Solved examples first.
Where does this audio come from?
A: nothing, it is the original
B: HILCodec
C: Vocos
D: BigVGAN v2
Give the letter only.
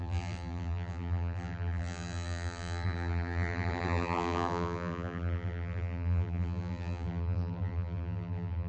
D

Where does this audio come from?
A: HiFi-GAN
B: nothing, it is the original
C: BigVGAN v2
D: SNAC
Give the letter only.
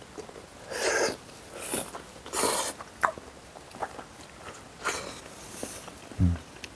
B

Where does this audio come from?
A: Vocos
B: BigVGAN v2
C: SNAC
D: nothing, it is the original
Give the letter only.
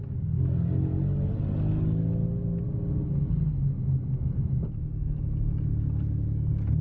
D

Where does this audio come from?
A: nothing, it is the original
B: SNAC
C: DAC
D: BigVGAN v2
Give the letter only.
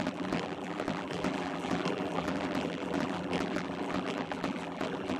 D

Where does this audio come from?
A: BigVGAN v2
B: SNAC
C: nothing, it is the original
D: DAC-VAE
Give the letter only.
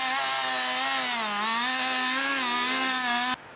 C